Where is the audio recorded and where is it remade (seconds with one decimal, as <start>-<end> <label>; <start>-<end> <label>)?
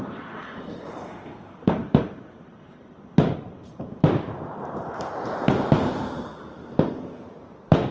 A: 0.0-7.9 remade